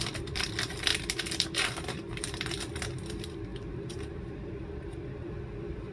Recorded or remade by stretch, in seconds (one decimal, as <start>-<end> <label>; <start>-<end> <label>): 0.0-5.9 remade